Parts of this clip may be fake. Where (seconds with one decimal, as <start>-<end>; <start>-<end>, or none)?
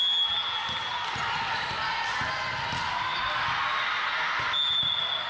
none